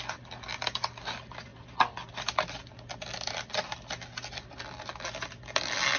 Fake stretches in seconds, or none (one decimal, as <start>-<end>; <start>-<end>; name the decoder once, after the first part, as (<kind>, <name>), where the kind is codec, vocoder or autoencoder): none